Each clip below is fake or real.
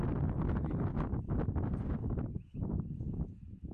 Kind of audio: real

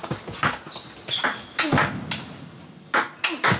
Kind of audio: real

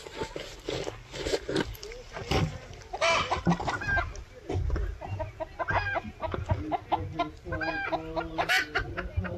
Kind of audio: real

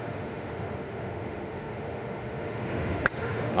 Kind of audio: fake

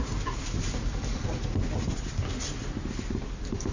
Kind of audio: fake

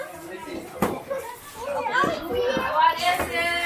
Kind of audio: real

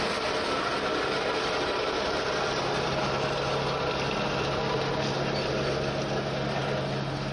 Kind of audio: real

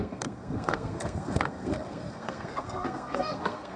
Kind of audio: fake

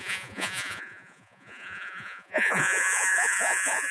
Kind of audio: fake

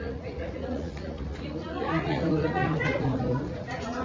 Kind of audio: fake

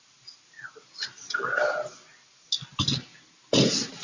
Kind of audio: real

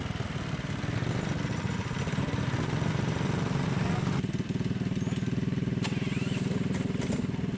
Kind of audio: real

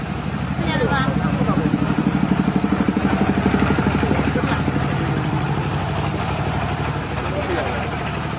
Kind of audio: fake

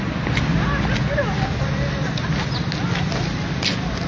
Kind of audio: real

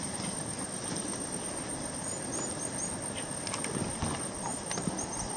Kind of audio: real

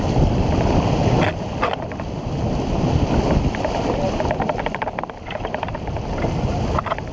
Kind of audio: real